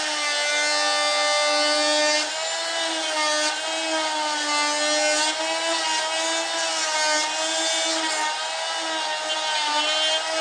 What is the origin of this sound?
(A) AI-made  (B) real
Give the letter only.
B